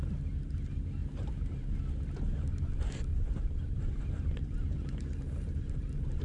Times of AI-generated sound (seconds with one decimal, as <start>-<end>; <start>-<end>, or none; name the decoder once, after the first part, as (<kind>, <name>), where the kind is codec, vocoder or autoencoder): 1.0-1.8 (vocoder, BigVGAN v2); 3.1-6.2